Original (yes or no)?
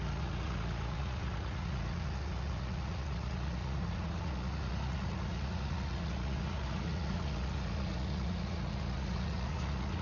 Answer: no